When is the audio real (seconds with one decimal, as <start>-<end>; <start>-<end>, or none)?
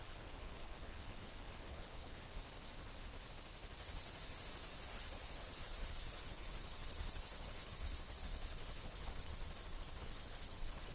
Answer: 2.4-4.8; 9.4-10.0